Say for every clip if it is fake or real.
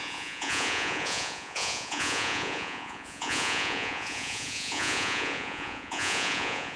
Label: fake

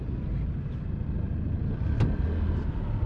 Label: real